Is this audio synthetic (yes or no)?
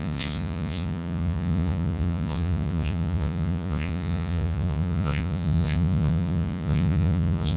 yes